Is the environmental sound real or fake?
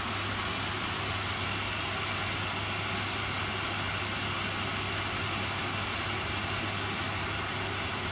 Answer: real